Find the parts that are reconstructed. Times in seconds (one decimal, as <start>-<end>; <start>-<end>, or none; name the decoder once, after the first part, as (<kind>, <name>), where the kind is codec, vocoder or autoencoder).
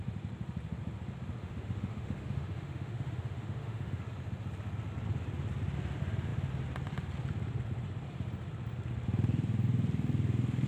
1.4-4.0 (autoencoder, DAC-VAE)